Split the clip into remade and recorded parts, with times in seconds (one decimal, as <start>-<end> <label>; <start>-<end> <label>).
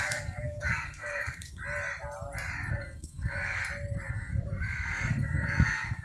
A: 0.0-1.6 remade; 1.6-2.7 recorded; 2.7-3.6 remade; 3.6-4.1 recorded; 4.1-6.0 remade